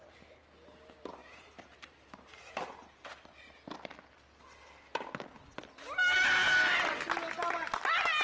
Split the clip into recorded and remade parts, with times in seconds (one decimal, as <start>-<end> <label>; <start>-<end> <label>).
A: 0.0-1.2 recorded; 1.2-3.3 remade; 3.3-8.2 recorded